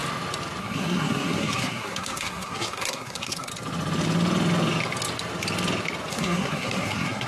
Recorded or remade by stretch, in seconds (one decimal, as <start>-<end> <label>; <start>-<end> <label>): 0.0-0.6 recorded; 0.6-3.5 remade; 3.5-6.1 recorded; 6.1-7.3 remade